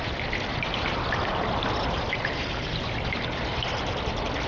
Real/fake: real